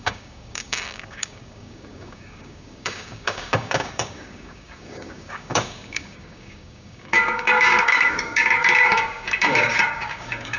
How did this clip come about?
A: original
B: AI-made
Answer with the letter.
B